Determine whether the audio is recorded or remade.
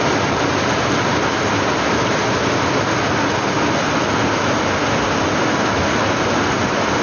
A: recorded